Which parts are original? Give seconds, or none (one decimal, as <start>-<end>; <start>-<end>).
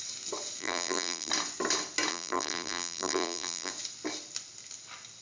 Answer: 0.0-0.6; 1.3-2.1; 3.7-5.2